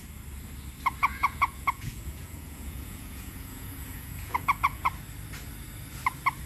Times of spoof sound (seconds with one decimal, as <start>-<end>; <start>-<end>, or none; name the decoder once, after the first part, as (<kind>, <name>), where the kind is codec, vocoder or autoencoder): 1.0-4.9 (vocoder, Vocos)